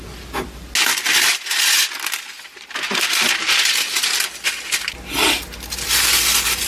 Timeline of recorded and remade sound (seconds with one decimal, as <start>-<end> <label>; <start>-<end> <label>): 0.0-6.7 recorded